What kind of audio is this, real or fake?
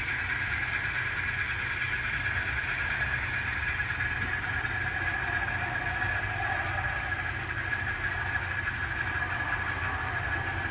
real